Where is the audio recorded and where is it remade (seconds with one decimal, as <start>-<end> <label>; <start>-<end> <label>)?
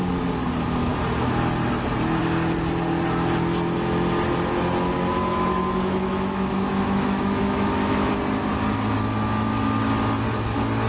0.0-5.3 recorded; 5.3-8.1 remade; 8.1-10.9 recorded